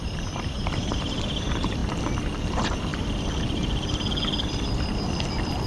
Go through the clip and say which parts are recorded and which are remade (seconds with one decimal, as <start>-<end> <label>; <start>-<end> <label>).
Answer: 0.0-1.8 remade; 1.8-2.4 recorded; 2.4-2.9 remade; 2.9-5.7 recorded